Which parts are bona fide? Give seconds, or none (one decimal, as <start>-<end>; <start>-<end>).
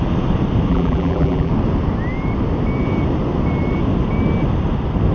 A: 0.0-0.7; 1.5-5.1